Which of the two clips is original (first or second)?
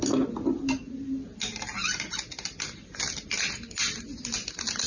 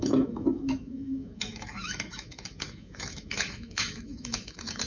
first